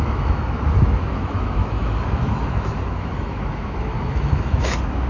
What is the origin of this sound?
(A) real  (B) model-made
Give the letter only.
B